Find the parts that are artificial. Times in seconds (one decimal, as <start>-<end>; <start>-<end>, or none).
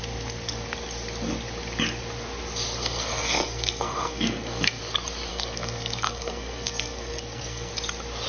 2.8-4.8; 5.3-7.7